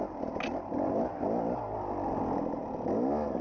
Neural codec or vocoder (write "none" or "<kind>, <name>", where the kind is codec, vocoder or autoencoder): none